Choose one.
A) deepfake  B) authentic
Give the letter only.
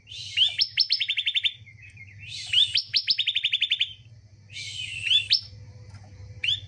B